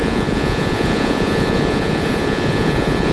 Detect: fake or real fake